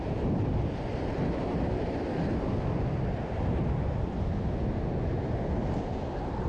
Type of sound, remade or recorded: recorded